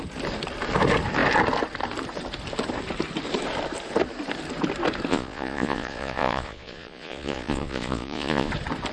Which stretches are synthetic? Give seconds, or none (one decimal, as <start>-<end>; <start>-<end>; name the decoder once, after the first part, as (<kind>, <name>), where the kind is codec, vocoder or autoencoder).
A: 5.1-8.5 (vocoder, Vocos)